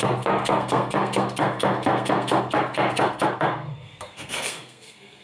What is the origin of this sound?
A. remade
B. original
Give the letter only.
A